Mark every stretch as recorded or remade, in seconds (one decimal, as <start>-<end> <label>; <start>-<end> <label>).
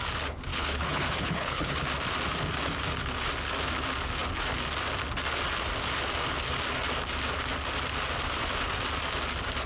0.0-0.5 recorded; 0.5-1.8 remade; 1.8-9.7 recorded